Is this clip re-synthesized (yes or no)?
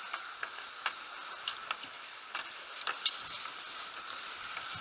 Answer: no